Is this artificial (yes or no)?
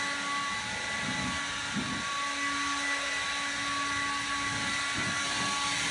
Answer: no